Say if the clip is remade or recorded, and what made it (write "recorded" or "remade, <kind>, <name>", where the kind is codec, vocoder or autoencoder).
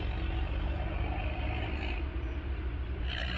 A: recorded